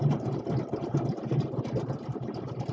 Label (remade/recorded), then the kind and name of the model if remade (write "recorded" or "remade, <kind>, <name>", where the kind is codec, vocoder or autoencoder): remade, vocoder, BigVGAN v2